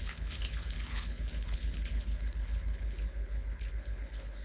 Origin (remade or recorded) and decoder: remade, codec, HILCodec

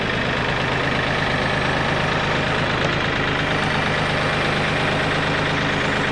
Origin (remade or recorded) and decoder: recorded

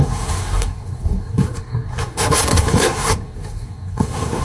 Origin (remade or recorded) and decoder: remade, codec, SNAC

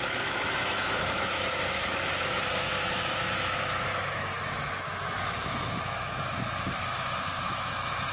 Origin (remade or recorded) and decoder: remade, autoencoder, DAC-VAE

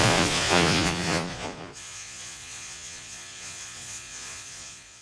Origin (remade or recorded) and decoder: remade, vocoder, Vocos